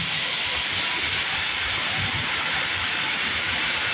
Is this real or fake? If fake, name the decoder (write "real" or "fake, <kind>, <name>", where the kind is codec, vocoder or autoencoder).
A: real